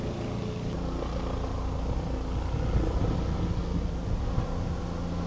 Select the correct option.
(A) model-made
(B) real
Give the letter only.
B